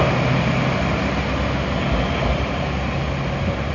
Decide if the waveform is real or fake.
real